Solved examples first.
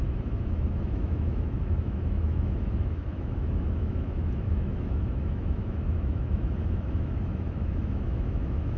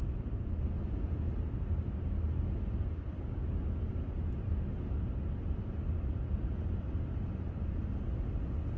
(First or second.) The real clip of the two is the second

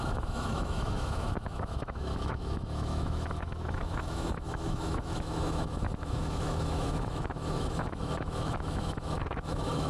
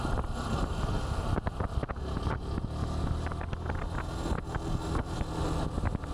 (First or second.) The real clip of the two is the second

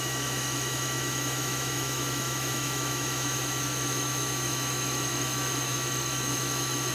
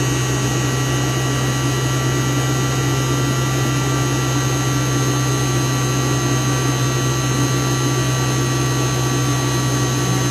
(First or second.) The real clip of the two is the second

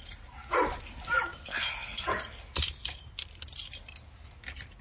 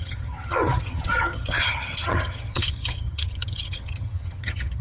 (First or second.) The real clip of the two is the first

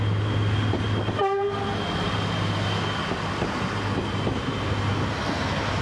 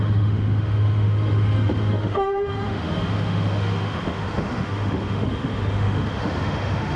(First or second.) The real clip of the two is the first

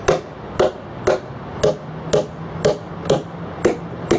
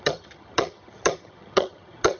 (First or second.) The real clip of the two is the first